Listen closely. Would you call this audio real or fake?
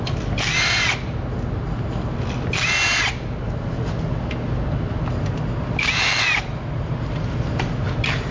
real